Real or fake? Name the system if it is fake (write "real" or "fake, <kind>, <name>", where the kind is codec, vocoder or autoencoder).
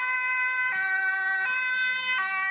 real